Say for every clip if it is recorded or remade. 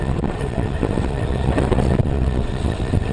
remade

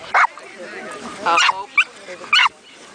recorded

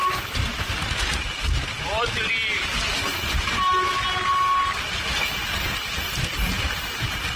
recorded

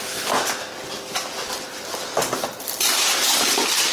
recorded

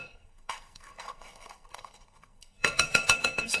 remade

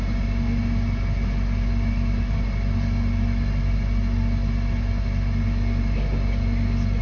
recorded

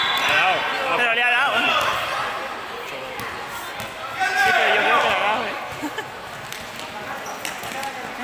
recorded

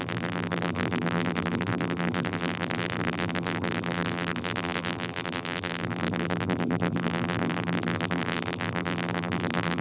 remade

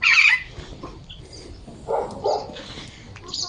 recorded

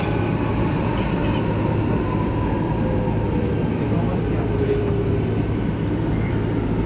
remade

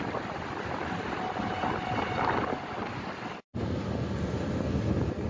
recorded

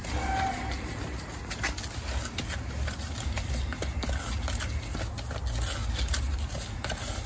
recorded